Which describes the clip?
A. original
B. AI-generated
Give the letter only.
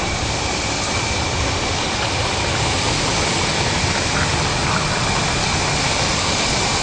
A